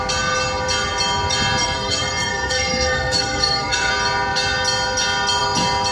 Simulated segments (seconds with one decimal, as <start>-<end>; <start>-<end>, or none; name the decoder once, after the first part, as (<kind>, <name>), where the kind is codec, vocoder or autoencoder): 1.6-3.9 (codec, SNAC)